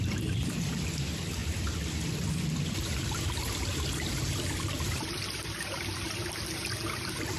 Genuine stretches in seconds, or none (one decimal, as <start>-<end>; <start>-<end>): 0.0-7.4